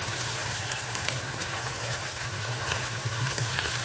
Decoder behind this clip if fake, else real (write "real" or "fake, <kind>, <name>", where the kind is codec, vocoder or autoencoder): fake, codec, SNAC